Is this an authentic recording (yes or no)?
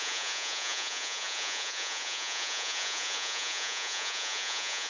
no